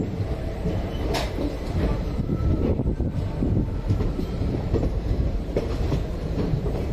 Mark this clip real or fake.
fake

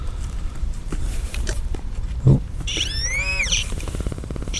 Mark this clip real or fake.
fake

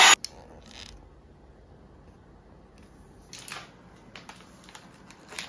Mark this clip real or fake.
real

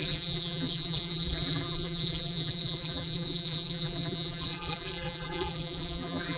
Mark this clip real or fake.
fake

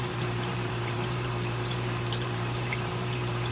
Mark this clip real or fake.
fake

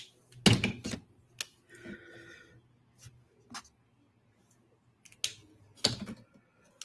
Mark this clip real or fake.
real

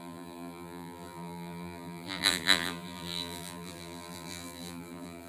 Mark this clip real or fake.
fake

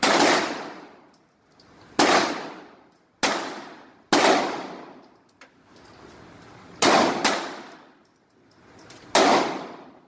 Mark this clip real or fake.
real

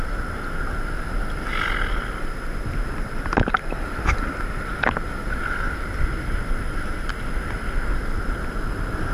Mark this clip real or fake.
real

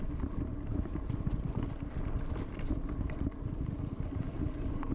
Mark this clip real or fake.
real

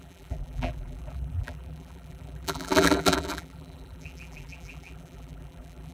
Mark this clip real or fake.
fake